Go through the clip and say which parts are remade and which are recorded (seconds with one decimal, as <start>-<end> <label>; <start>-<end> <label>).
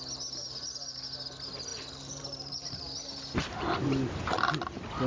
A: 0.0-0.4 recorded; 0.4-1.0 remade; 1.0-1.7 recorded; 1.7-4.2 remade; 4.2-5.1 recorded